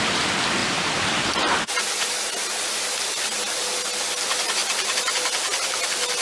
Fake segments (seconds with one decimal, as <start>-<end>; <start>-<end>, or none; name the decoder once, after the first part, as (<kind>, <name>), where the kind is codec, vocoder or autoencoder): none